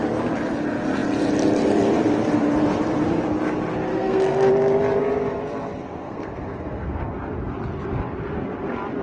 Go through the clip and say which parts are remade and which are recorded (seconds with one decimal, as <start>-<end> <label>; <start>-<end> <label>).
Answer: 0.0-3.9 recorded; 3.9-4.5 remade; 4.5-5.8 recorded; 5.8-7.1 remade; 7.1-9.0 recorded